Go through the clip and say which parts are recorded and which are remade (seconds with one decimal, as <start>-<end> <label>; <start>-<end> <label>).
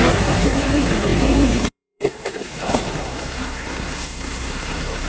0.0-5.1 remade